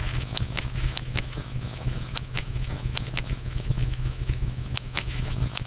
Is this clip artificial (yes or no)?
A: yes